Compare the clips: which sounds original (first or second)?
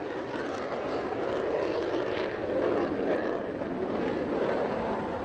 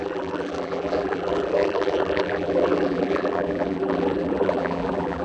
first